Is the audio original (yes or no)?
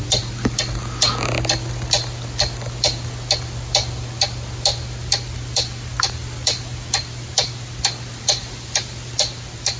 yes